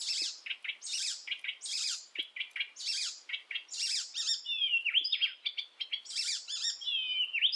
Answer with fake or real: real